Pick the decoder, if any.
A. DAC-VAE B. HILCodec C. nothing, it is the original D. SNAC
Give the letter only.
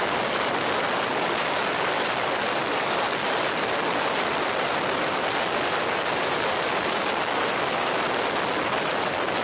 C